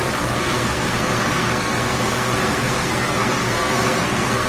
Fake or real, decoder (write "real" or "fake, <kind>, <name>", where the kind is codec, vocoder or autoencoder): fake, codec, SNAC